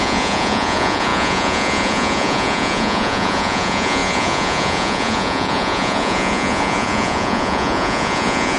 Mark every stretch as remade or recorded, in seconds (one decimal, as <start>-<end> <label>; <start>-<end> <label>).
0.0-8.6 remade